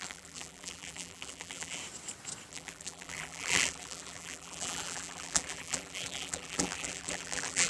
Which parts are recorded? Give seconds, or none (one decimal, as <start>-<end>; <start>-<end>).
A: 1.8-2.5